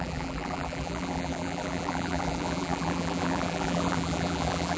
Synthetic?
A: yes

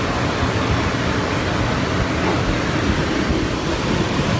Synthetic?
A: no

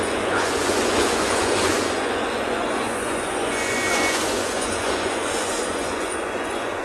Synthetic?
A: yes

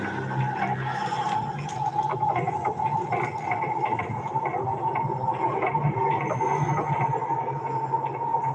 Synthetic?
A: no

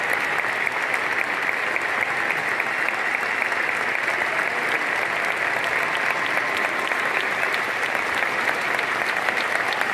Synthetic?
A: no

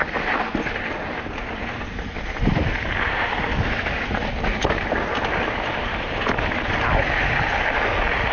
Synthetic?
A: no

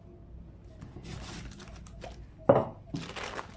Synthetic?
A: no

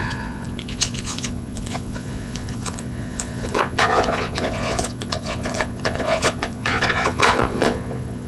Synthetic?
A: yes